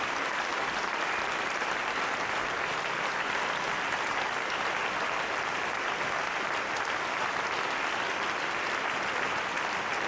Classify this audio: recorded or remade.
recorded